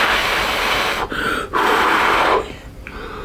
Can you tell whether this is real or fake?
real